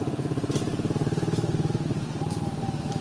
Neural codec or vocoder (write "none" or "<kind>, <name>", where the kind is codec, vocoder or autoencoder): none